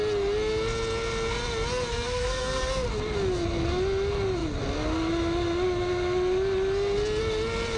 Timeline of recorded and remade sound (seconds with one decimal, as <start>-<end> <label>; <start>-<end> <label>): 0.0-1.9 recorded; 1.9-2.7 remade; 2.7-7.8 recorded